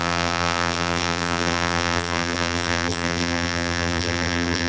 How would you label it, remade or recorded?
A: remade